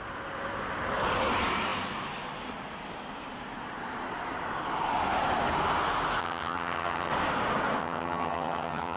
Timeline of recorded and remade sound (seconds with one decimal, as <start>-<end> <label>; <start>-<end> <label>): 0.0-6.2 recorded; 6.2-7.1 remade; 7.1-7.8 recorded; 7.8-9.0 remade